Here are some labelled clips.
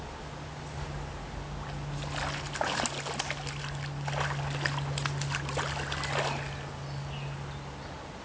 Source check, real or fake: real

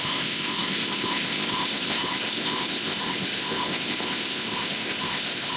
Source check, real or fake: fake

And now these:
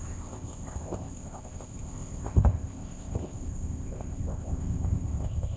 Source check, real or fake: fake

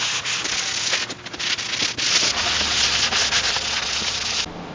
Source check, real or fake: real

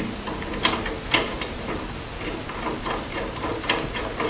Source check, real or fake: real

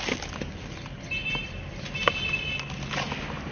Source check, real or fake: real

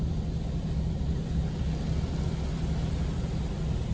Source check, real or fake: real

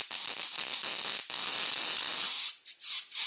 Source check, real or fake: real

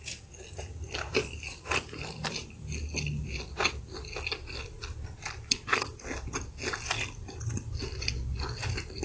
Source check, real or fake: real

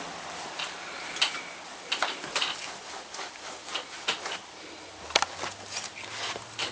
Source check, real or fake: real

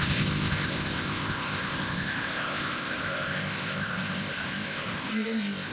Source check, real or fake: fake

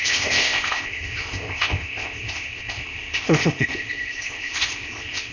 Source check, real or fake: fake